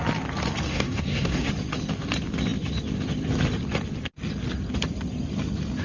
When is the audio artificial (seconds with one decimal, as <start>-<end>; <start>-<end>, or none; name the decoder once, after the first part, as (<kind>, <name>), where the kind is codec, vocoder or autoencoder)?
0.7-1.5 (codec, SNAC)